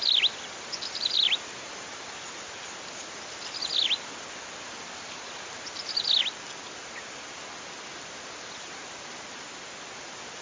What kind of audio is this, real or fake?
real